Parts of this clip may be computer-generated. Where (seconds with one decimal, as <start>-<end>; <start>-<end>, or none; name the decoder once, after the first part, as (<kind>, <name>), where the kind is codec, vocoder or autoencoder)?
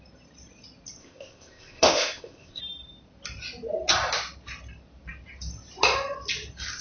1.0-2.6 (codec, ZipCodec)